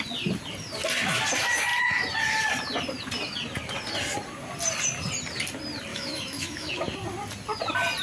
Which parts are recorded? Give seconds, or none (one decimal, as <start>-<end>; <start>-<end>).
0.0-5.9; 6.7-8.0